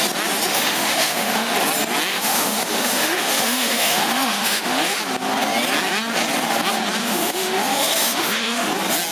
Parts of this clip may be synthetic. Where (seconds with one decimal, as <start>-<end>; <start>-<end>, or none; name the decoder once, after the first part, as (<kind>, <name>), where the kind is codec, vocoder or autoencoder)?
0.5-1.5 (autoencoder, DAC-VAE); 2.1-5.0; 7.0-8.7